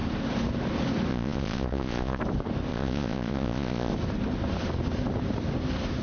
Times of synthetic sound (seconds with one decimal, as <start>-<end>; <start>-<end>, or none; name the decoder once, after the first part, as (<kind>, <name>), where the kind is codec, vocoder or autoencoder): 1.1-2.2 (vocoder, Vocos); 2.7-3.9